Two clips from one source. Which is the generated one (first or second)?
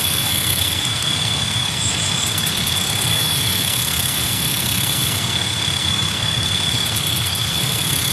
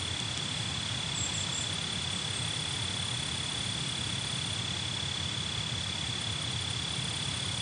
first